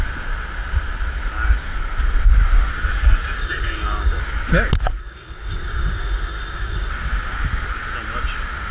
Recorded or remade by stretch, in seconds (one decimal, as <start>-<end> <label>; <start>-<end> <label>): 0.0-3.4 recorded; 3.4-4.2 remade; 4.2-5.0 recorded; 5.0-6.9 remade; 6.9-8.7 recorded